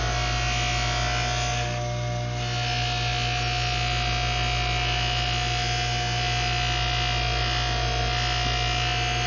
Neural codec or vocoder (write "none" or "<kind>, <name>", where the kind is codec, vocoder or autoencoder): none